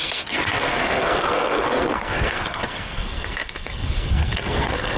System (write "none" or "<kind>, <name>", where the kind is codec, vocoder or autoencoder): codec, SNAC